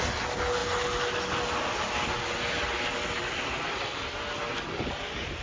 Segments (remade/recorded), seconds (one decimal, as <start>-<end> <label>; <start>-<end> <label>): 0.0-5.4 recorded